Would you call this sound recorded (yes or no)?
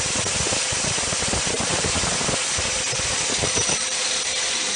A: yes